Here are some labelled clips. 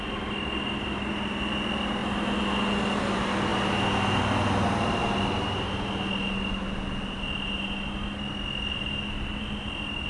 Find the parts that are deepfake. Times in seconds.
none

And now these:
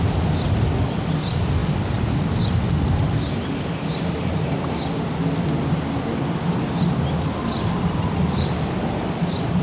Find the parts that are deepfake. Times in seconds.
none